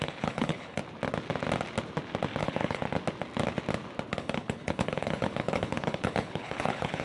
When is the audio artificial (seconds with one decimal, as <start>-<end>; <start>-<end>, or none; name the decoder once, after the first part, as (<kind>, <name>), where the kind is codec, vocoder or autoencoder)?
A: 0.0-0.8 (codec, HILCodec); 2.4-2.8; 4.1-7.0